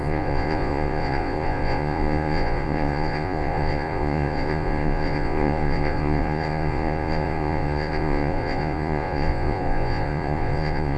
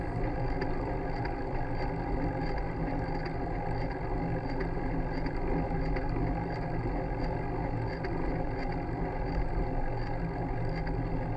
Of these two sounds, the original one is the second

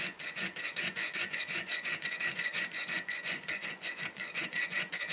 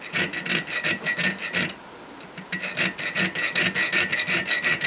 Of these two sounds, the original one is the second